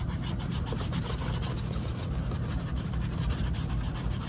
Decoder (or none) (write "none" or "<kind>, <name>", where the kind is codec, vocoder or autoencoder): vocoder, BigVGAN v2